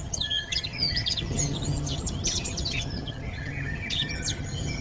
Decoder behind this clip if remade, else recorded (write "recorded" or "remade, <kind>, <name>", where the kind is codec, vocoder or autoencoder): remade, vocoder, HiFi-GAN